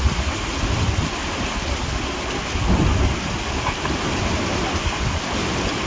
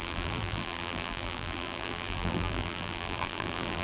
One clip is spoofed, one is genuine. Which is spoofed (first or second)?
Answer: second